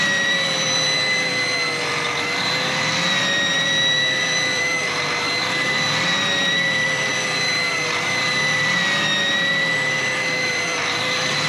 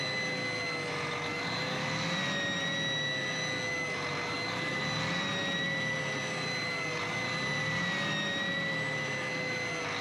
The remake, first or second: first